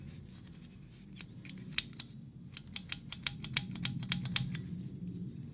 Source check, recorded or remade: recorded